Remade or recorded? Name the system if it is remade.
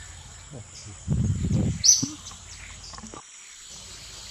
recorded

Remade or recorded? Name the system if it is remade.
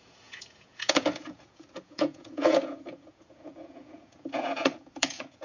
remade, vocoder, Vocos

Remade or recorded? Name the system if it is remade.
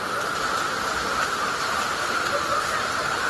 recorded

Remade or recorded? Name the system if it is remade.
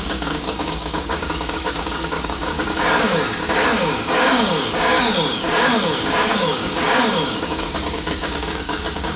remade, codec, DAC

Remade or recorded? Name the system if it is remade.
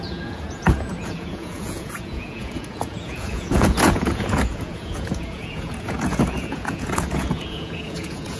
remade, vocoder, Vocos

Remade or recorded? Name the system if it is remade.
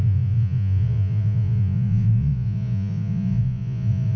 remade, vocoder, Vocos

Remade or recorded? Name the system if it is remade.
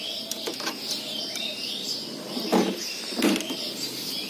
recorded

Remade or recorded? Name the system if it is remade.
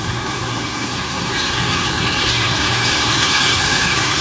remade, codec, SNAC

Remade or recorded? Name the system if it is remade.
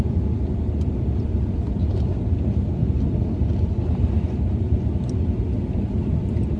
recorded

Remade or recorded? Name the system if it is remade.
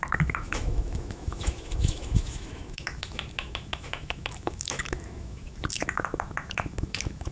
remade, autoencoder, DAC-VAE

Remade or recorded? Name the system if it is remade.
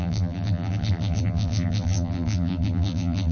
remade, vocoder, BigVGAN v2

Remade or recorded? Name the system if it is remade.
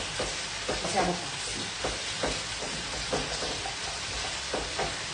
recorded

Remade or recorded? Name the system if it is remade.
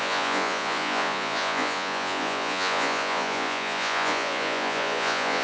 remade, vocoder, Vocos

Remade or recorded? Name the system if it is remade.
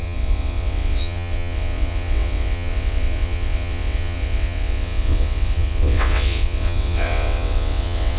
remade, vocoder, WaveNeXt